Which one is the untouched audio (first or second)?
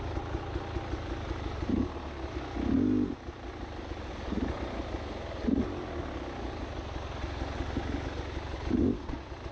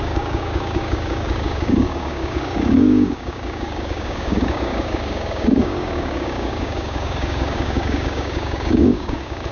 first